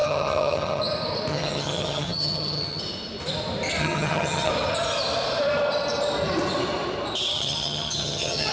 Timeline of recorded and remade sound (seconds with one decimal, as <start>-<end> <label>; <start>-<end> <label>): 0.0-0.8 remade; 0.8-1.3 recorded; 1.3-2.8 remade; 2.8-3.8 recorded; 3.8-4.5 remade; 4.5-7.3 recorded; 7.3-8.5 remade